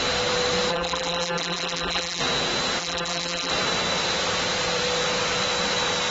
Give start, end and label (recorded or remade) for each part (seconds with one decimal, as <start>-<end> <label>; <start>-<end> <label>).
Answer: 0.0-0.7 recorded; 0.7-2.2 remade; 2.2-2.8 recorded; 2.8-3.5 remade; 3.5-6.1 recorded

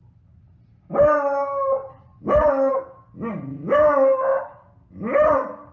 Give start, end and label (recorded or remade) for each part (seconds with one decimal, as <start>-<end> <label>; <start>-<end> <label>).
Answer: 0.0-5.7 recorded